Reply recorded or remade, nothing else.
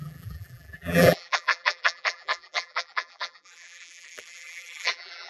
remade